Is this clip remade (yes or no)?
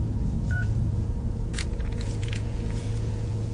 yes